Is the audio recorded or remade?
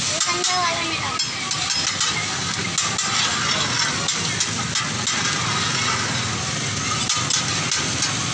recorded